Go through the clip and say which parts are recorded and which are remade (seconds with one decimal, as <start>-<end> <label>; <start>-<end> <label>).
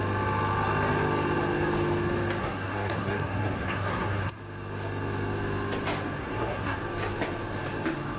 0.0-2.4 recorded; 2.4-4.4 remade; 4.4-6.2 recorded; 6.2-6.8 remade; 6.8-8.2 recorded